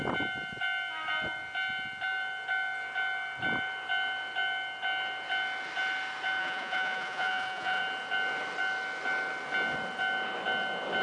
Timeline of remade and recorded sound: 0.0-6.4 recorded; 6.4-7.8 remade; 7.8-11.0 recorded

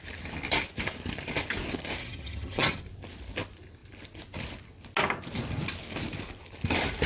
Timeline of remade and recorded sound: 0.0-2.0 recorded; 2.0-2.8 remade; 2.8-7.1 recorded

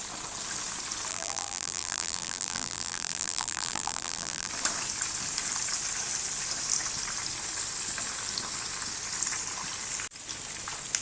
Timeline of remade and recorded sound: 0.0-1.1 recorded; 1.1-4.5 remade; 4.5-11.0 recorded

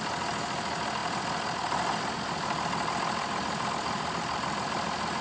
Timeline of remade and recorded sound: 0.0-5.2 recorded

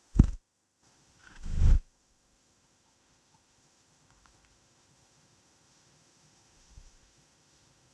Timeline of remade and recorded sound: 0.0-7.9 remade

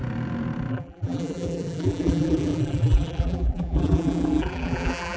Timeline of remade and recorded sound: 0.0-0.7 recorded; 0.7-5.2 remade